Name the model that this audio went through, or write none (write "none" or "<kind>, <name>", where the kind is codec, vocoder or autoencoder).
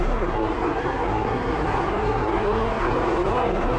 codec, SNAC